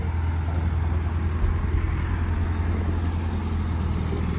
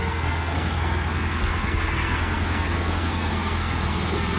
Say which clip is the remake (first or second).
second